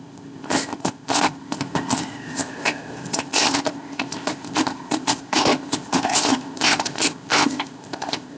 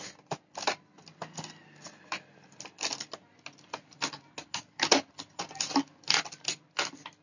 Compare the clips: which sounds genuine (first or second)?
second